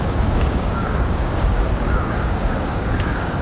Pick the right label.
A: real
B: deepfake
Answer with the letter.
B